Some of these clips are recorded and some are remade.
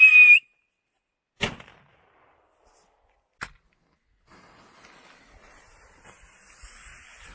recorded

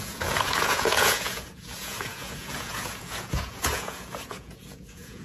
remade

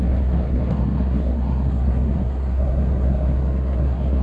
remade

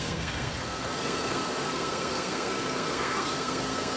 remade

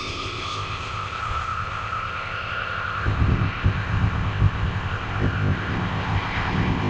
remade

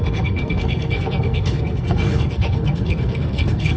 remade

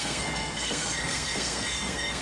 remade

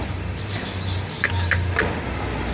recorded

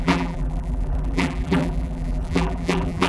remade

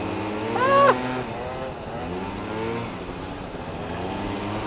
recorded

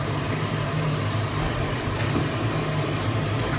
remade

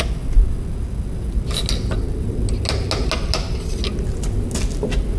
recorded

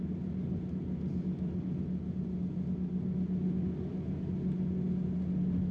recorded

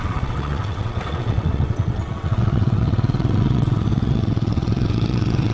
remade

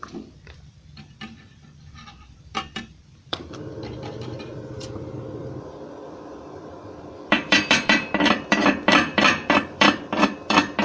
remade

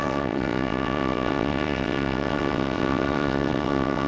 remade